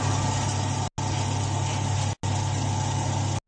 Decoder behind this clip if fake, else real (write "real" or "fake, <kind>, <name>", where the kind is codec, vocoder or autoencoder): real